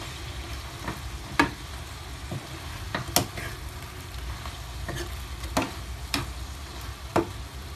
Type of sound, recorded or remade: recorded